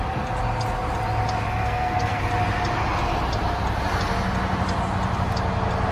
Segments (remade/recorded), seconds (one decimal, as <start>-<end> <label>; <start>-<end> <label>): 0.0-1.6 recorded; 1.6-2.2 remade; 2.2-5.9 recorded